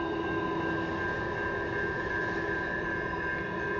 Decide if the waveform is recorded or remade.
recorded